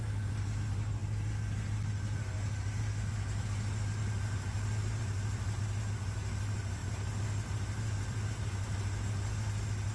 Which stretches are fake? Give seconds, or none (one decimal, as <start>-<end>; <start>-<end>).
4.0-5.6; 6.8-8.3